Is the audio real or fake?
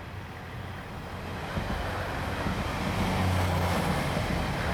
real